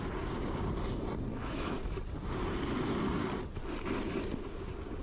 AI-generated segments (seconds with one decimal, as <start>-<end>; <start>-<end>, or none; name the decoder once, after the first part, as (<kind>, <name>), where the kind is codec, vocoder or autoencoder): 1.3-2.0 (autoencoder, DAC-VAE)